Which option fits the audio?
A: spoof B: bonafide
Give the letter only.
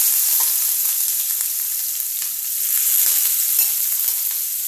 B